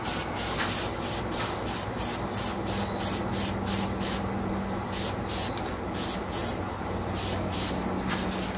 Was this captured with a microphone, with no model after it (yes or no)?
yes